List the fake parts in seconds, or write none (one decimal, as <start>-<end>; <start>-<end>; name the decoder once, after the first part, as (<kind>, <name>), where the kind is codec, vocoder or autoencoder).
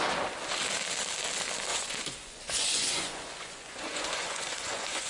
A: 1.7-5.1 (vocoder, Vocos)